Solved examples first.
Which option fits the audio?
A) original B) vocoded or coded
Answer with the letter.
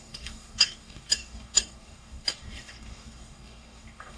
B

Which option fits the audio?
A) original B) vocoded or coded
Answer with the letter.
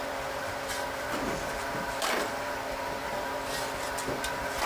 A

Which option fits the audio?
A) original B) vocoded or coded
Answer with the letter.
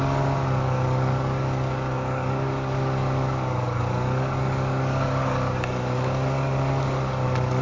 B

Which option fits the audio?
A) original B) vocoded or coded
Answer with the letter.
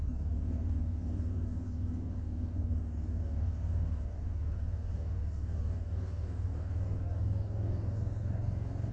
B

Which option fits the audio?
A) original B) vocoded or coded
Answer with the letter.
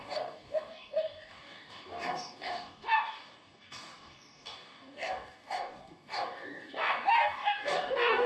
B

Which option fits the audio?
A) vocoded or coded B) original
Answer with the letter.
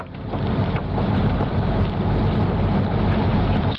B